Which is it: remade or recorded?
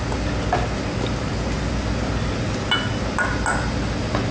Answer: recorded